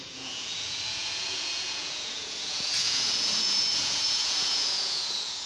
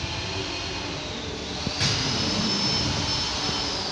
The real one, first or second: second